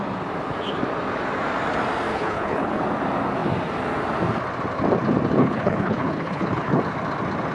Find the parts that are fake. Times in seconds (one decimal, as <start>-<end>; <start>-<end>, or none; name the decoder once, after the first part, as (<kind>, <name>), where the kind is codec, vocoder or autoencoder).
2.1-2.8 (codec, HILCodec); 5.4-6.8